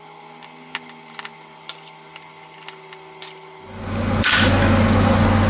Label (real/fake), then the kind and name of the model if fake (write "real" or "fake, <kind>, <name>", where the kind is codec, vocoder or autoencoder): real